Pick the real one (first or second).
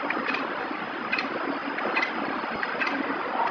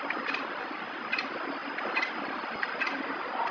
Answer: second